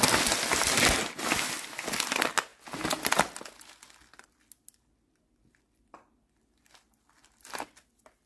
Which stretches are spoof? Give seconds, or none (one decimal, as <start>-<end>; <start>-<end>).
none